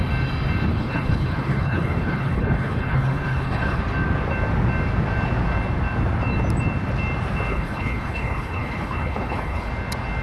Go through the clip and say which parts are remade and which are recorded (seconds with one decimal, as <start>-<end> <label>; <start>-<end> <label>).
0.0-0.7 recorded; 0.7-3.8 remade; 3.8-7.5 recorded; 7.5-9.7 remade; 9.7-10.2 recorded